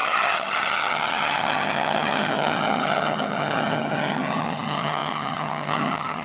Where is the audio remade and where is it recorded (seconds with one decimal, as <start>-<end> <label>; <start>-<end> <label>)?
0.0-6.2 remade